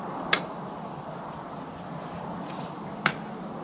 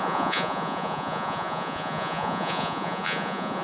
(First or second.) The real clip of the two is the first